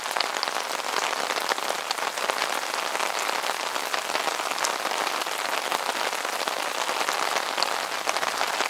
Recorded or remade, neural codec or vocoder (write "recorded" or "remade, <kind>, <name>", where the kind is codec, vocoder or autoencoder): recorded